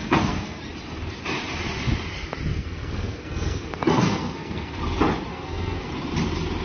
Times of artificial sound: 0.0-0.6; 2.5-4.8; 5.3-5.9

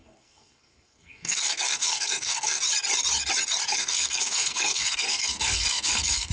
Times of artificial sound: 0.0-2.6; 3.7-6.3

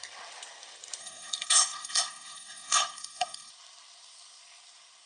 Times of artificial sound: 1.0-3.5